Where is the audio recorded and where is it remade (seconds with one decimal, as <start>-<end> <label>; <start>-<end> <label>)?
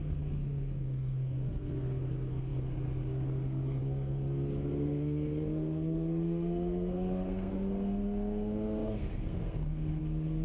0.0-10.4 remade